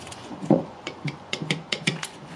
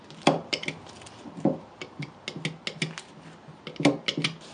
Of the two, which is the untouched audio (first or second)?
second